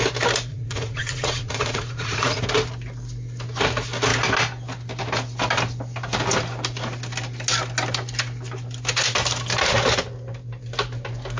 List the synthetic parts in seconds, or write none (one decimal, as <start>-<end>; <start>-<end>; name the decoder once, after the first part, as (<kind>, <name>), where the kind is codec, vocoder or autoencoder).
0.5-2.4 (vocoder, Vocos)